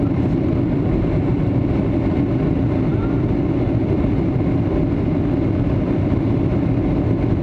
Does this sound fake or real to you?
real